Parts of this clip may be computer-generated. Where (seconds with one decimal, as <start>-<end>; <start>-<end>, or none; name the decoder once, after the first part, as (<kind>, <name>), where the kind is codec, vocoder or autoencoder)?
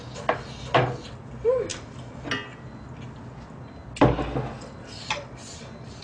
none